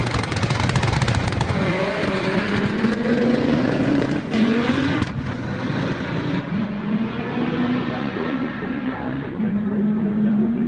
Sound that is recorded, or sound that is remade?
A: remade